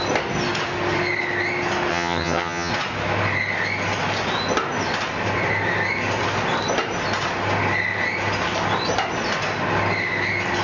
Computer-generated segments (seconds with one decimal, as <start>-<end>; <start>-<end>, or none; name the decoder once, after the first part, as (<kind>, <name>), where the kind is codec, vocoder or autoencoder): 1.9-2.7 (vocoder, HiFi-GAN)